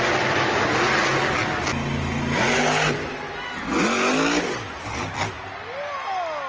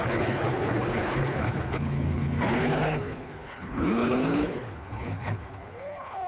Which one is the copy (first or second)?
second